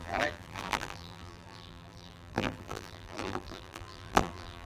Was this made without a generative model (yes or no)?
no